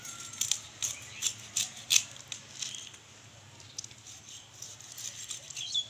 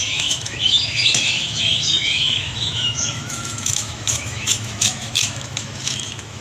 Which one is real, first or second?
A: first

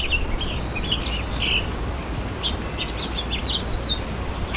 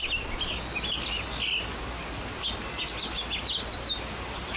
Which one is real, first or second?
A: second